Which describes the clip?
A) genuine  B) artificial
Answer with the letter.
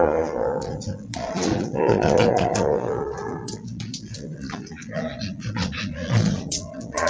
B